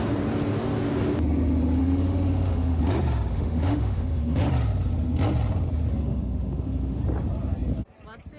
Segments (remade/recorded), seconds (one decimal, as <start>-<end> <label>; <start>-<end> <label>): 0.0-1.8 recorded; 1.8-2.8 remade; 2.8-3.3 recorded; 3.3-4.5 remade; 4.5-5.9 recorded; 5.9-7.0 remade; 7.0-8.4 recorded

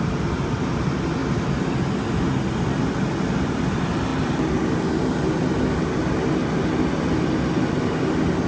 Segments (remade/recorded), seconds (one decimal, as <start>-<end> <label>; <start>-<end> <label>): 0.0-8.5 recorded

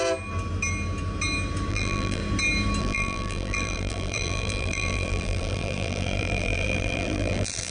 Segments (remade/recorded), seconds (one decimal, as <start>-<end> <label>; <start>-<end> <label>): 0.0-1.7 recorded; 1.7-2.2 remade; 2.2-2.8 recorded; 2.8-7.7 remade

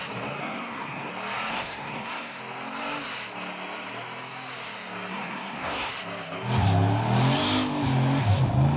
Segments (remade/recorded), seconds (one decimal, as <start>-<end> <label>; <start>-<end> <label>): 0.0-0.4 recorded; 0.4-1.1 remade; 1.1-1.5 recorded; 1.5-2.4 remade; 2.4-5.1 recorded; 5.1-5.9 remade; 5.9-8.8 recorded